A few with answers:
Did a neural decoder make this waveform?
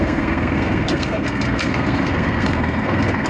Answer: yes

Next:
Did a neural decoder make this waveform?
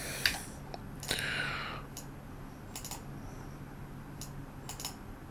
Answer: no